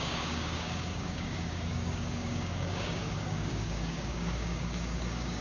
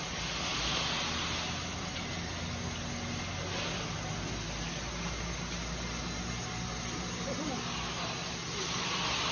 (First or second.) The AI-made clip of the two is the first